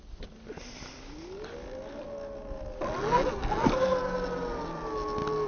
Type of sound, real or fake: real